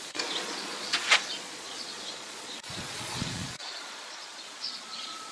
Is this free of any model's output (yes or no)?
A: no